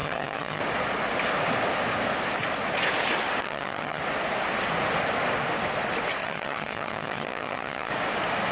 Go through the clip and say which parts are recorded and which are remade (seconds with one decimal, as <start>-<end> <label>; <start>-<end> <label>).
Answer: 0.0-0.6 remade; 0.6-3.4 recorded; 3.4-4.0 remade; 4.0-6.2 recorded; 6.2-7.9 remade; 7.9-8.5 recorded